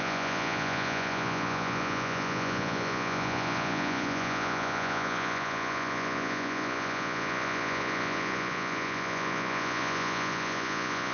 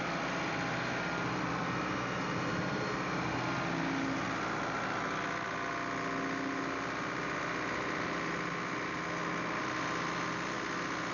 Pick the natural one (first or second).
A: second